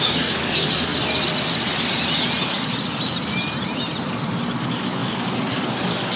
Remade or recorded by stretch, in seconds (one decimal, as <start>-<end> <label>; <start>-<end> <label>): 0.0-0.9 remade; 0.9-4.6 recorded; 4.6-6.2 remade